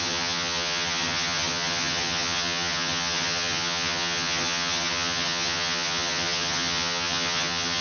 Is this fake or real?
fake